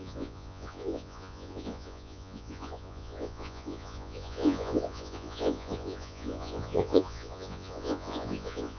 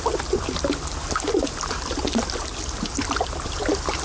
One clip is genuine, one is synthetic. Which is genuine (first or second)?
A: second